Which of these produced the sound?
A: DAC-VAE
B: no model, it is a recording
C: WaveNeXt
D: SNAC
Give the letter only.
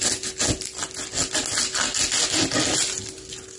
B